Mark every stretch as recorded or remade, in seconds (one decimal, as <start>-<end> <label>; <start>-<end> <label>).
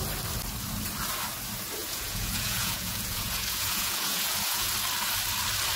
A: 0.0-1.8 recorded; 1.8-4.7 remade; 4.7-5.8 recorded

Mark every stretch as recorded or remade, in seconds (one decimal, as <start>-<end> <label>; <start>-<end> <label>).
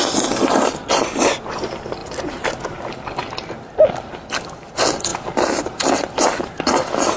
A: 0.0-2.0 recorded; 2.0-2.9 remade; 2.9-7.2 recorded